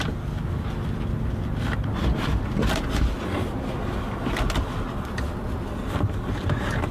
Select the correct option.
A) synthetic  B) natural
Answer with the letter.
B